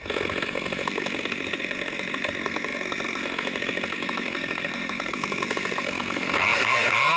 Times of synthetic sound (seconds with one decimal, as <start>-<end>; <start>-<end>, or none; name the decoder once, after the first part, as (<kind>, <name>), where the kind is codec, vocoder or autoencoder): 0.0-7.2 (codec, SNAC)